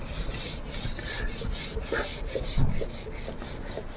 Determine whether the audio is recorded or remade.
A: recorded